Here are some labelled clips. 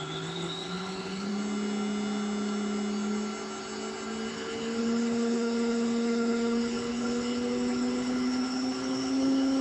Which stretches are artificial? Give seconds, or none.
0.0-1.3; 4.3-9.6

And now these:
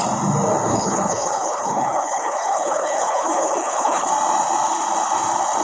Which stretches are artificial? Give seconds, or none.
0.7-4.1

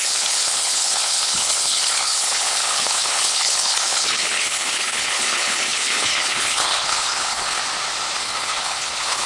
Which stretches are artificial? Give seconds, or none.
0.0-7.6; 8.2-9.3

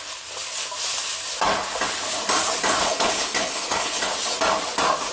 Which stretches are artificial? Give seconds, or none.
2.8-4.0

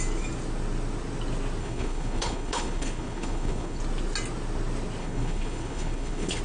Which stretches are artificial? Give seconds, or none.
1.6-3.8; 5.0-6.4

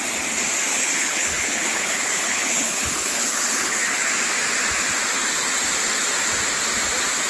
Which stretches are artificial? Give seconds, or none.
0.7-4.1